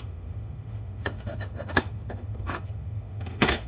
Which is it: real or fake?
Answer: fake